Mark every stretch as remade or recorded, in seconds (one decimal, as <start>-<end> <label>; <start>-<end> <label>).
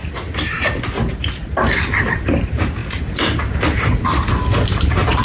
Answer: 0.0-2.0 recorded; 2.0-2.8 remade; 2.8-4.8 recorded; 4.8-5.2 remade